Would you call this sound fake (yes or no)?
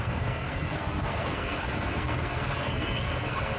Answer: yes